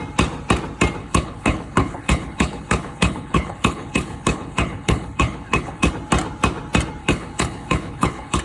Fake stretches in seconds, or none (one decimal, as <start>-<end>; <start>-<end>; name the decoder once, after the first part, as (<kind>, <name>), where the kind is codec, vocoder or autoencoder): 1.0-5.9 (codec, HILCodec); 7.0-8.4